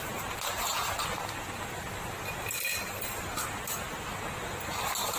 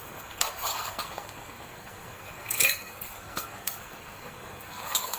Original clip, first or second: first